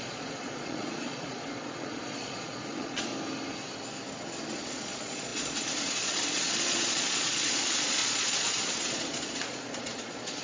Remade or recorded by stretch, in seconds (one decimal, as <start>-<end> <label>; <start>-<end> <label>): 0.0-3.1 remade; 3.1-4.5 recorded; 4.5-10.4 remade